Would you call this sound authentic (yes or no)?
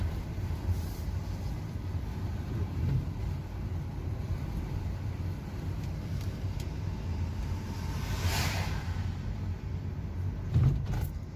yes